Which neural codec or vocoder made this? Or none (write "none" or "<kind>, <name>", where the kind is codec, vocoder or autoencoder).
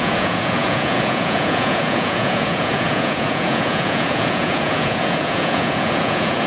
vocoder, Vocos